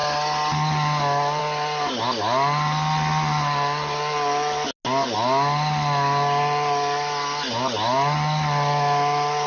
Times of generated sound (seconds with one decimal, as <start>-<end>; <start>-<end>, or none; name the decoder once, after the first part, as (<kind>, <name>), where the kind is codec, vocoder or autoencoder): none